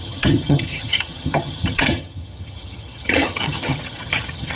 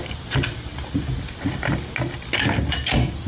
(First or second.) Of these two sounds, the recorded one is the second